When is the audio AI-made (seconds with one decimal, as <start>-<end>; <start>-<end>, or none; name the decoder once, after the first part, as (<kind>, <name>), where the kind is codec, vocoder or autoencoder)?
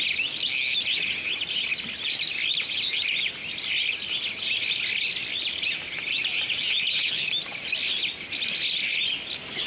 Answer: 1.7-5.7 (vocoder, BigVGAN v2)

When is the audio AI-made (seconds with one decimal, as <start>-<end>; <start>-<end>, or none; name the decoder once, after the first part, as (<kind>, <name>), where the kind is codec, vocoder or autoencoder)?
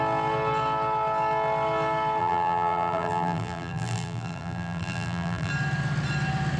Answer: 2.2-5.5 (vocoder, BigVGAN v2)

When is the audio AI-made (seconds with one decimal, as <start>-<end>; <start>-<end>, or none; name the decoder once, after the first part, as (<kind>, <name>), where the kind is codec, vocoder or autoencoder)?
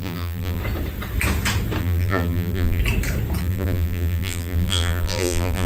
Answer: 0.0-0.6 (vocoder, BigVGAN v2); 1.8-2.8; 3.4-5.7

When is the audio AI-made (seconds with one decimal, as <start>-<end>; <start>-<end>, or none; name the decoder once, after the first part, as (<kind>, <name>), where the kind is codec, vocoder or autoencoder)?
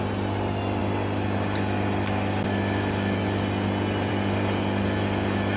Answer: none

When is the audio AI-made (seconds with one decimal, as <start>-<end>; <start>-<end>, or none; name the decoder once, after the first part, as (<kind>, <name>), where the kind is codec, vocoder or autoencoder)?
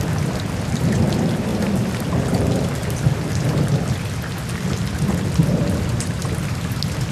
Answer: 0.0-1.5 (vocoder, BigVGAN v2); 5.2-6.2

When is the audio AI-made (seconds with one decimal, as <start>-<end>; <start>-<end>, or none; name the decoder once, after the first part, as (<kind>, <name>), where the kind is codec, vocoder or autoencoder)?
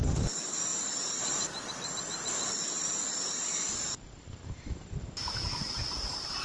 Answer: 0.7-4.5 (vocoder, BigVGAN v2)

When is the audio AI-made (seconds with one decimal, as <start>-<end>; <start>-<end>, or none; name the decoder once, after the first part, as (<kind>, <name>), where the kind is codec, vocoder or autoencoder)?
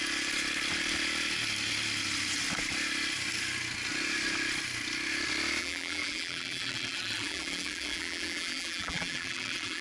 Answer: 5.6-9.8 (vocoder, BigVGAN v2)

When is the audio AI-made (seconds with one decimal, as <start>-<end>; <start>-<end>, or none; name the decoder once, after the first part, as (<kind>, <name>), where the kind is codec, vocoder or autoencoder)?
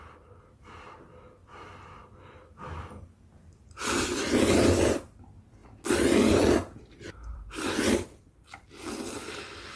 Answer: 1.4-4.8 (vocoder, BigVGAN v2); 5.6-7.8